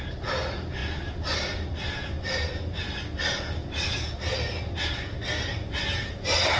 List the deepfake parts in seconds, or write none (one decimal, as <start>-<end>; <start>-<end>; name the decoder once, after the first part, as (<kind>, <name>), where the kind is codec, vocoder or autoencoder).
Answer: none